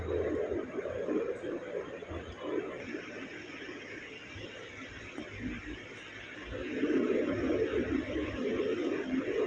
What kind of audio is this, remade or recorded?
recorded